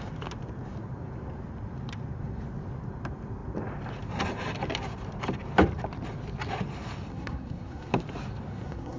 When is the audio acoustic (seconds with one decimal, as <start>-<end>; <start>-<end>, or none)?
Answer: 0.0-7.1; 7.9-8.5